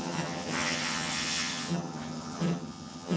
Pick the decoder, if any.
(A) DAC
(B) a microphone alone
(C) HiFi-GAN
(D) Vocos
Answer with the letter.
C